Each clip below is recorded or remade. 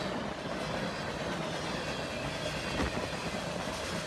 recorded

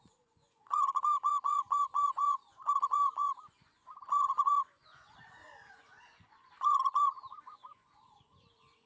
remade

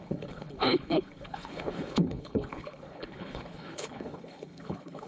remade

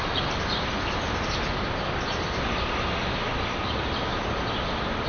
recorded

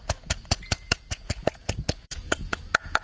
remade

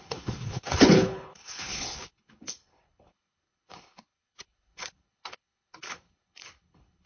remade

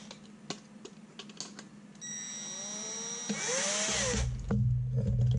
recorded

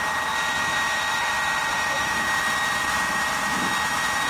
recorded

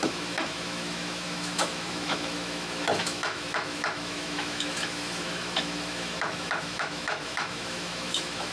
remade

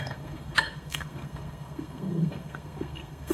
remade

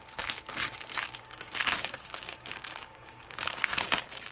remade